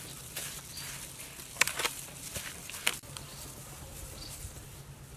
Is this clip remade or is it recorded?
remade